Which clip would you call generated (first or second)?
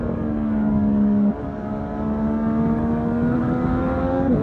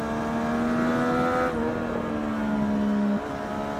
first